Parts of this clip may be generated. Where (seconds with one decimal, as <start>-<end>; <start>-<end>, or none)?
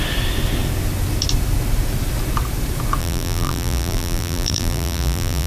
3.0-5.5